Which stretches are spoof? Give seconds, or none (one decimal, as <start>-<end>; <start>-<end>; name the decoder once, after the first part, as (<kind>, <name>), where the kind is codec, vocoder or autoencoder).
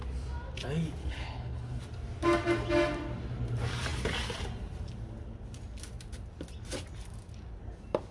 1.0-1.8 (codec, HILCodec)